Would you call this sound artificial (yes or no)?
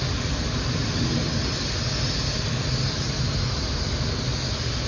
no